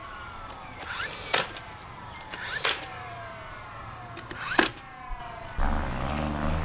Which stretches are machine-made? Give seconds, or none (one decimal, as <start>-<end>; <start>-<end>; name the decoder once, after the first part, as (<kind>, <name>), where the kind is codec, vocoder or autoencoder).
0.0-4.0 (vocoder, BigVGAN v2); 4.7-5.2